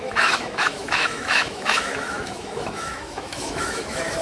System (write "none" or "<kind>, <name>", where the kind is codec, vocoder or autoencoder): autoencoder, DAC-VAE